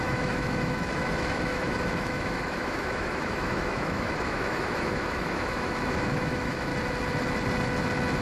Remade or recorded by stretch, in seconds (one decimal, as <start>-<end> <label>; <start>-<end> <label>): 0.0-6.7 remade; 6.7-8.2 recorded